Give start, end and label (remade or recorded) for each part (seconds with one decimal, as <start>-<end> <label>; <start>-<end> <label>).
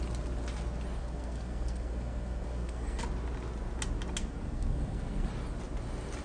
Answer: 0.0-1.0 recorded; 1.0-3.0 remade; 3.0-4.2 recorded; 4.2-5.3 remade; 5.3-6.2 recorded